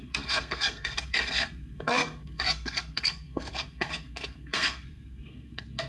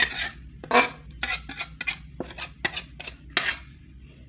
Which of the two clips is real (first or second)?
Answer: second